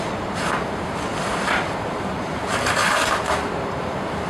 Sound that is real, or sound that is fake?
fake